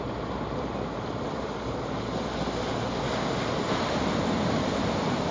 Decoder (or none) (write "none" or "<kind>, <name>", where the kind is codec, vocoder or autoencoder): none